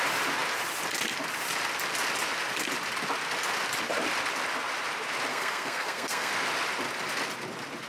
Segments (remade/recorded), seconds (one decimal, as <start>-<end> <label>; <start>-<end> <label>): 0.0-5.3 recorded; 5.3-6.3 remade; 6.3-7.9 recorded